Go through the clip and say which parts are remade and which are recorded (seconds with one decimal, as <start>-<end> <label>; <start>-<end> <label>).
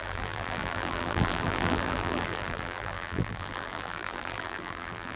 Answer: 0.0-5.2 remade